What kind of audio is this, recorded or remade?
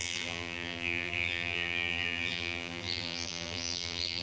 remade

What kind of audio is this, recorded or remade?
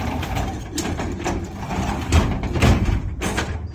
remade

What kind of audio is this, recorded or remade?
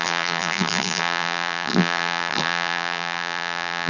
remade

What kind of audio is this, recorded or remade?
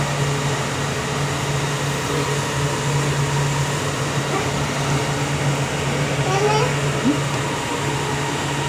recorded